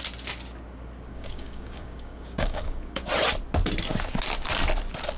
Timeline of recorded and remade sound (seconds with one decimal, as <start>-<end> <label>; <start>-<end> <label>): 0.0-1.1 recorded; 1.1-3.1 remade; 3.1-5.2 recorded